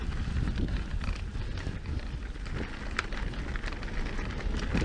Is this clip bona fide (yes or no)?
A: yes